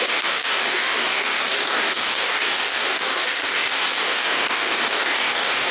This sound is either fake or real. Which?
fake